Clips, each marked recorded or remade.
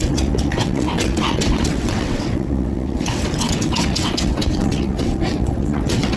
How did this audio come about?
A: remade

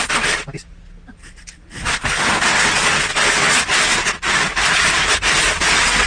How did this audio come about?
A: recorded